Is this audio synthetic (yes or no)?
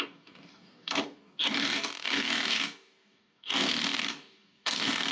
yes